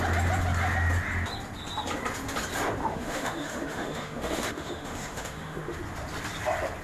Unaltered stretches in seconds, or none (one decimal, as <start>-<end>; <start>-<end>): 0.0-2.8; 5.8-6.8